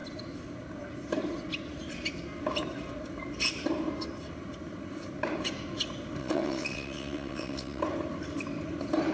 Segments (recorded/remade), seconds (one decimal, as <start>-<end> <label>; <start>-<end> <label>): 0.0-6.2 recorded; 6.2-7.8 remade; 7.8-9.1 recorded